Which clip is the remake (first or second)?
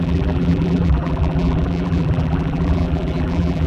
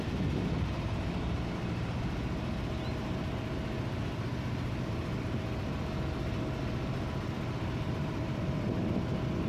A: first